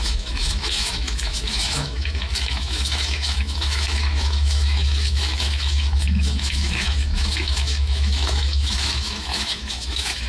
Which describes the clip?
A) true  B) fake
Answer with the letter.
B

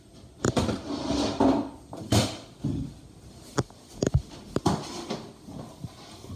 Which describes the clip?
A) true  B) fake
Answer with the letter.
A